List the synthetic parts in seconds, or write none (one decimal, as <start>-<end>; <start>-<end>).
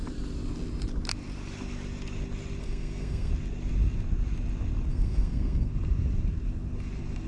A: 2.6-3.3; 4.9-5.7